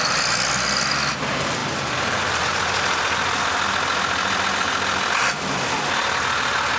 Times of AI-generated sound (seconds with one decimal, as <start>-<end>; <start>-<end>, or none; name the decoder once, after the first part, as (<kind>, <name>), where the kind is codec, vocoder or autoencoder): none